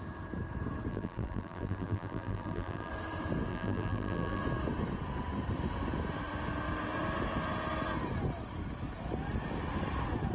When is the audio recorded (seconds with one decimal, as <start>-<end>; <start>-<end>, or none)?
0.0-0.9; 2.9-3.5; 4.4-10.3